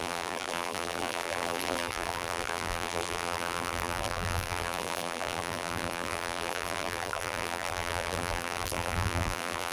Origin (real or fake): fake